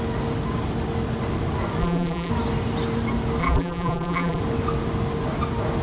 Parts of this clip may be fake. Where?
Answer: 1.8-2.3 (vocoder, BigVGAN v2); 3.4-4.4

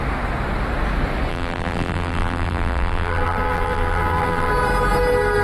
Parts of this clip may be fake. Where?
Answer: 1.3-4.5 (vocoder, BigVGAN v2)

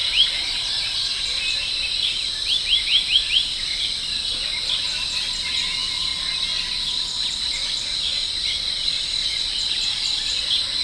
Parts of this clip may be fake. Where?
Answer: 0.0-1.6 (vocoder, BigVGAN v2); 2.9-3.8; 8.1-9.5

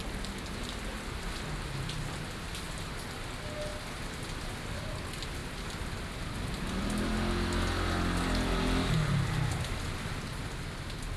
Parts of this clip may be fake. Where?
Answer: none